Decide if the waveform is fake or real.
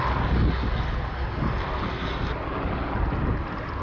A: real